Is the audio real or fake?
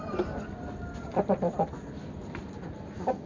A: fake